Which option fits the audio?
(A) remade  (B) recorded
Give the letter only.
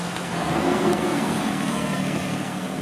A